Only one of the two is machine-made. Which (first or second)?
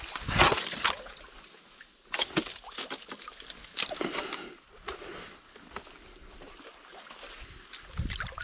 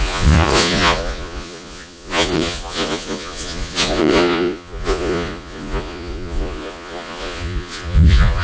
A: second